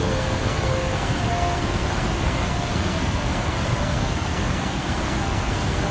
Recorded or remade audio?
remade